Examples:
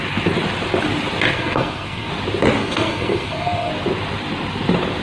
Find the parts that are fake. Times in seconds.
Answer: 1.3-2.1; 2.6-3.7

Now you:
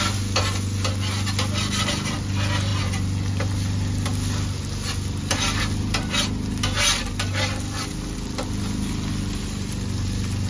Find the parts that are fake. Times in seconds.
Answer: none

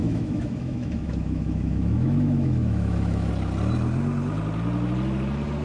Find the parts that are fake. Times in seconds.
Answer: 0.0-3.3